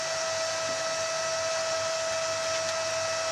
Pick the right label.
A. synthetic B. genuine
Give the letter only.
B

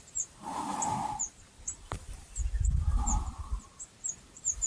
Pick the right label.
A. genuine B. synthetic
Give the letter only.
B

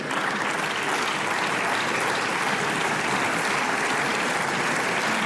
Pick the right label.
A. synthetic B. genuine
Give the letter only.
B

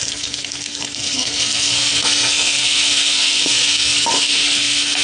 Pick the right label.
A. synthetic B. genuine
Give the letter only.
A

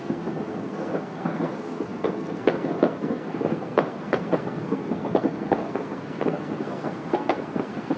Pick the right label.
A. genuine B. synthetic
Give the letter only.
B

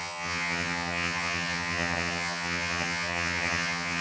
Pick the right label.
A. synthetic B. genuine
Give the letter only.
A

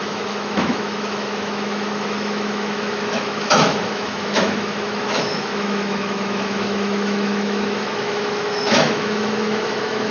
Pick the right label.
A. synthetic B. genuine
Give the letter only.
A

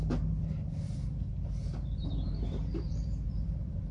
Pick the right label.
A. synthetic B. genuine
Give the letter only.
A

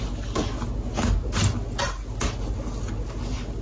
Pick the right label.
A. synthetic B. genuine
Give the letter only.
B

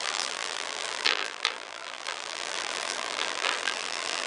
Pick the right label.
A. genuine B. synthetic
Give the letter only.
B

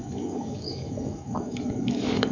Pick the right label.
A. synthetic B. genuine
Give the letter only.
A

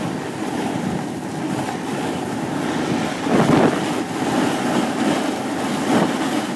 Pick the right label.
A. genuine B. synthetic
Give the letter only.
A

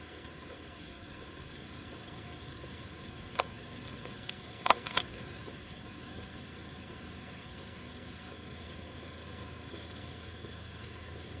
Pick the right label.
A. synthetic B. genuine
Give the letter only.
A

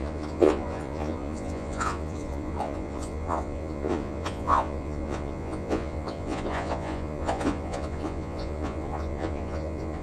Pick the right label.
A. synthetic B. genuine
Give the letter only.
A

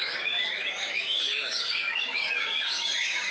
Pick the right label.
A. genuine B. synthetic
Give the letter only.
B